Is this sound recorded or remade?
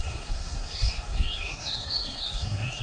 remade